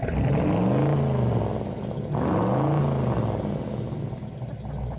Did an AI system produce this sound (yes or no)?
no